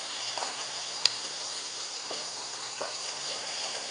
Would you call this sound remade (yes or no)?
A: yes